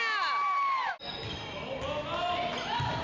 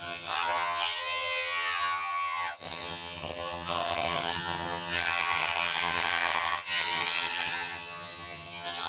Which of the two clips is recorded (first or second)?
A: first